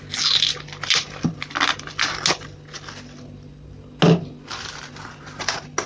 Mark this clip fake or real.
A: real